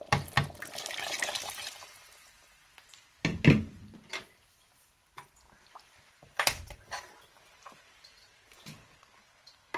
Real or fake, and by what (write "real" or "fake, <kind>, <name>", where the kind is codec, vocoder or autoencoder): real